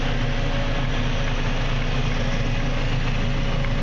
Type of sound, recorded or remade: recorded